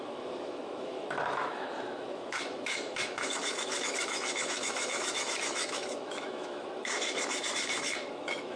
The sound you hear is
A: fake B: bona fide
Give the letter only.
A